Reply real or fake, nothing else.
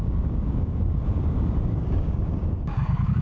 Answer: fake